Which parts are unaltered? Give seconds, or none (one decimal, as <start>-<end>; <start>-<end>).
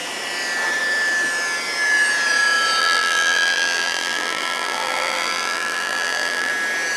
0.0-2.8; 6.5-7.0